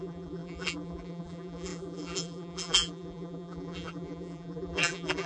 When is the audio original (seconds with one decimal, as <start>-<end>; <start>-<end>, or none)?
none